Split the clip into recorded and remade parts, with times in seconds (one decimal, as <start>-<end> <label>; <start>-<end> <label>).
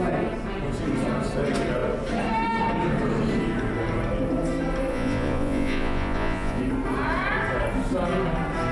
0.0-4.9 recorded; 4.9-6.6 remade; 6.6-8.7 recorded